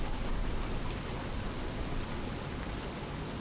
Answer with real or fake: real